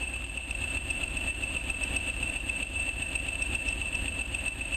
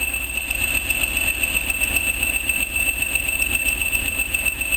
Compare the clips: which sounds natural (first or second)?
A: second